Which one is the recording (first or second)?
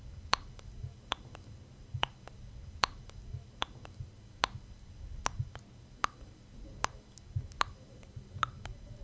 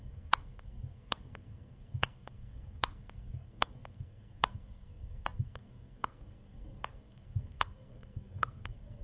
first